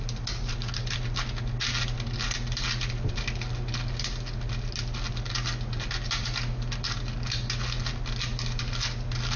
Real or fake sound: real